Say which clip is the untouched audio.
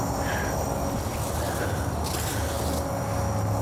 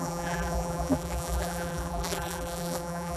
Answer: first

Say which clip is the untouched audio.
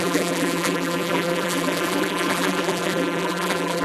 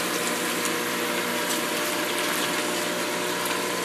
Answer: second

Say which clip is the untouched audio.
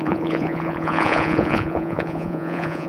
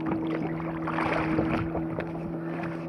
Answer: second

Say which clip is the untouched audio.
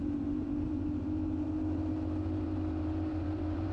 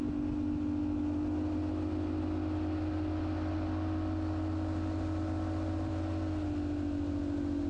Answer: second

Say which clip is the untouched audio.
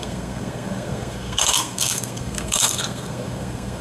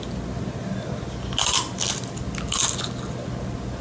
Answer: second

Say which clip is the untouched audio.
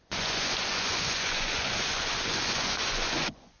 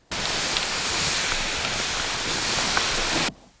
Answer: second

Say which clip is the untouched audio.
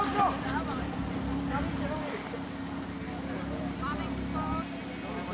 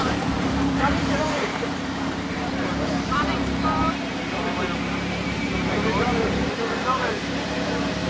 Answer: first